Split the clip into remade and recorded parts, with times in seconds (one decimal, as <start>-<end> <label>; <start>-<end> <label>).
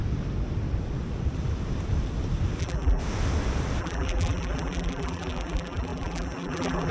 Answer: 0.0-2.6 recorded; 2.6-3.0 remade; 3.0-3.8 recorded; 3.8-6.9 remade